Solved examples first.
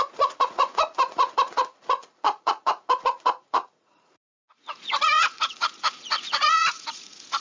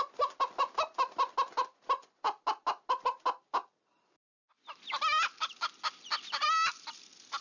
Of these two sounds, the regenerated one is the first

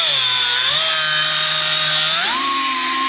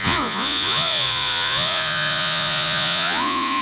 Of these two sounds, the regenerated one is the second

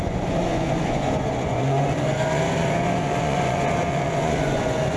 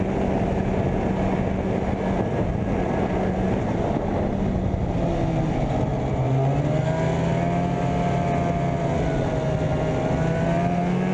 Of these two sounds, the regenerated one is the first